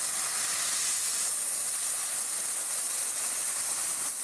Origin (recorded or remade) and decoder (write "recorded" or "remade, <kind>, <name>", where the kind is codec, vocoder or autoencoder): recorded